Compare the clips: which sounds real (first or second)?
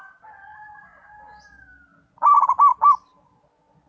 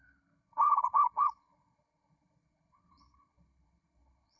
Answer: first